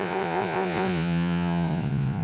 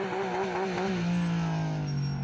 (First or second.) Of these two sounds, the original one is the second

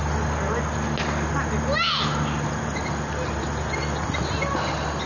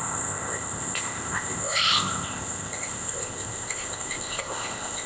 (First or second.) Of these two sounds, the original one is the first